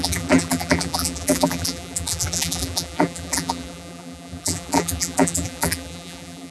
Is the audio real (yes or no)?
no